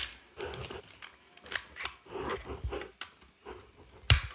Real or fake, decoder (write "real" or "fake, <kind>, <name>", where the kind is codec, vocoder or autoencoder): real